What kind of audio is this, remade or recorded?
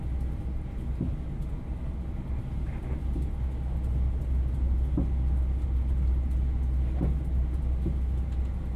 recorded